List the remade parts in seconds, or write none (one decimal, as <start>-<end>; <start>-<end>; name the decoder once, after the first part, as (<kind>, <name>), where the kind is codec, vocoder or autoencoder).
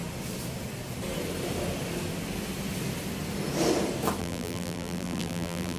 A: 4.2-5.8 (vocoder, BigVGAN v2)